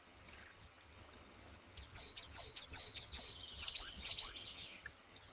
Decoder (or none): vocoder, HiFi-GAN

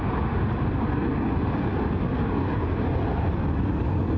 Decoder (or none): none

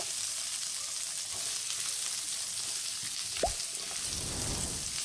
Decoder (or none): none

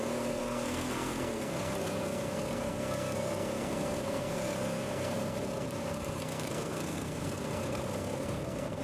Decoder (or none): codec, SNAC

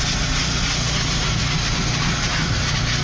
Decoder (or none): none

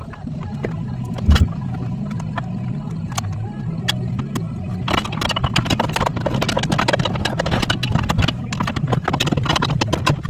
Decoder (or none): none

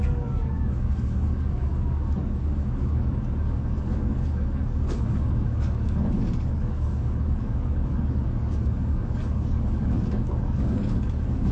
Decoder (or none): codec, DAC